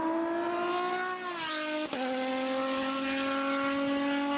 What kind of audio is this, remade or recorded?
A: recorded